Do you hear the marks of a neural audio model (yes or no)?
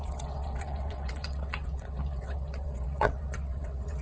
yes